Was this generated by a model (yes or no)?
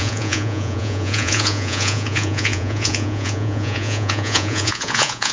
yes